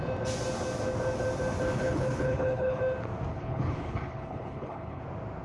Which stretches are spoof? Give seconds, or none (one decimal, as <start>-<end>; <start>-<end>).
1.8-2.8; 3.3-5.0